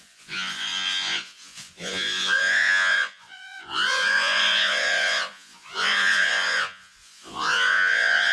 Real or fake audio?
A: fake